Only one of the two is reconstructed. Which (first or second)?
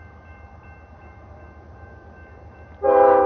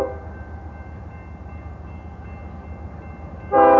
first